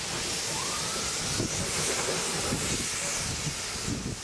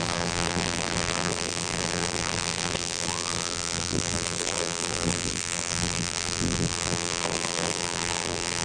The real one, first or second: first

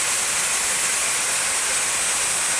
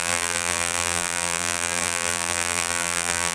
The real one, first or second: first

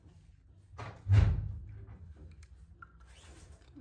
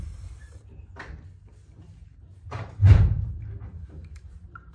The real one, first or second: first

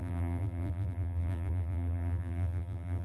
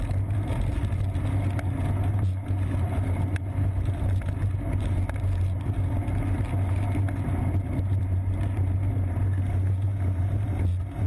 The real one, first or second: second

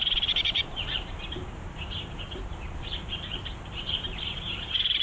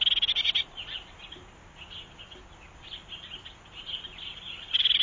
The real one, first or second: second